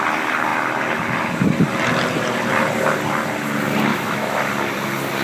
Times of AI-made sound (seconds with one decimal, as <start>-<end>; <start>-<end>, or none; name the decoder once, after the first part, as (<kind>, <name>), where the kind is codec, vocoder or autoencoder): 3.9-4.5 (autoencoder, DAC-VAE)